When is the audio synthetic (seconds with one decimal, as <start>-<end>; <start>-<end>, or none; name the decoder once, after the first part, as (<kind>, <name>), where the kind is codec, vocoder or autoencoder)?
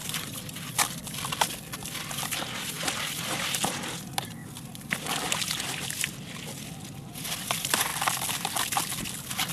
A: 0.0-4.4 (vocoder, BigVGAN v2); 7.4-7.9